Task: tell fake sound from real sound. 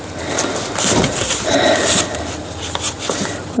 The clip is real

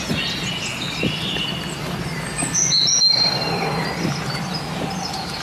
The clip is real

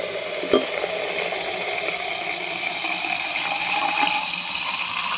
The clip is real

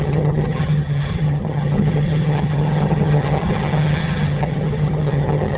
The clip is fake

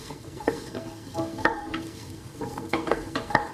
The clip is fake